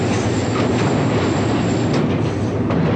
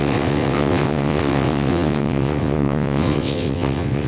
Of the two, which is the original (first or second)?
first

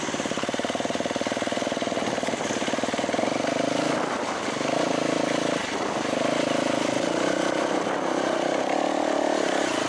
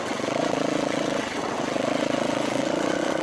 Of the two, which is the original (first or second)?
first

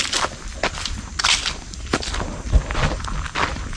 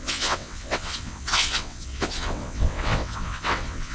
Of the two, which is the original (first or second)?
first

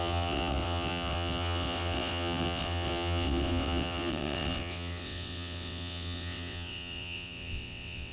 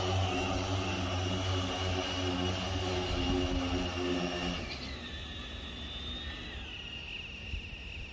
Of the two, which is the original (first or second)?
second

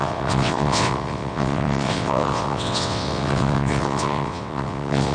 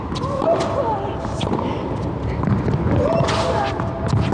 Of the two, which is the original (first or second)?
second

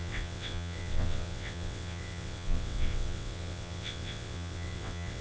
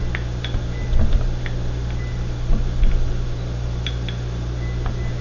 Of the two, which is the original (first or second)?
second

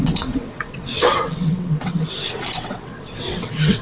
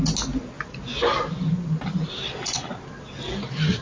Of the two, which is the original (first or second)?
second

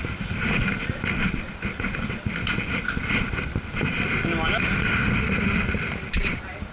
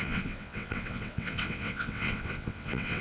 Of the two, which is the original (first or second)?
first